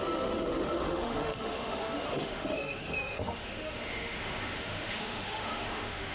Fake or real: fake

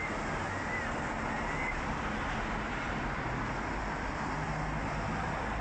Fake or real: fake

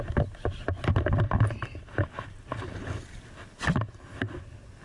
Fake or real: real